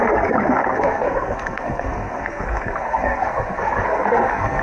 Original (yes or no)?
no